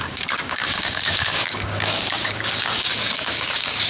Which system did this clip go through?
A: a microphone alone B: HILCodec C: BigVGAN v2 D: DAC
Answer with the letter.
D